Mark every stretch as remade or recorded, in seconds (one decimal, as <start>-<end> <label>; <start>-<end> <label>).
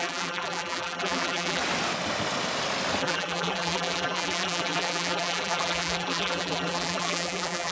0.0-1.6 remade; 1.6-3.0 recorded; 3.0-7.7 remade